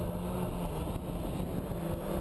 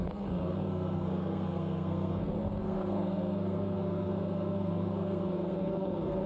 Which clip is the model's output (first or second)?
second